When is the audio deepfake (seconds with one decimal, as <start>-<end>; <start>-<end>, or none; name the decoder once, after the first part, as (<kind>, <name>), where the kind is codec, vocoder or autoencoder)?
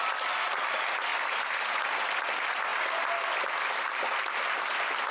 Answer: none